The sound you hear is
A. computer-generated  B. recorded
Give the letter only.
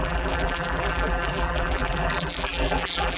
A